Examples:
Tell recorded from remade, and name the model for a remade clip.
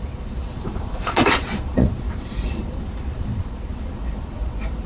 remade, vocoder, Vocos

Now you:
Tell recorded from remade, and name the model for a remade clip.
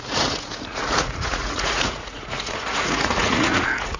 remade, vocoder, Vocos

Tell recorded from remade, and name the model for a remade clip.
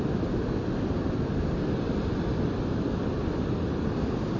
recorded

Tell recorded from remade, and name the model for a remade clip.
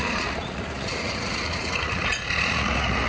remade, vocoder, Vocos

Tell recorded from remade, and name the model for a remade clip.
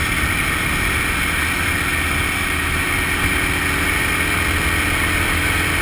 recorded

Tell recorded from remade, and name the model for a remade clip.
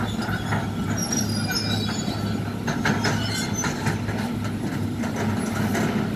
recorded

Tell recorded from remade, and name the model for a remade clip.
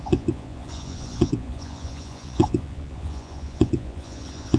remade, vocoder, Vocos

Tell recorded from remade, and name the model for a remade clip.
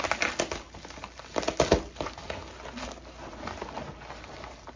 recorded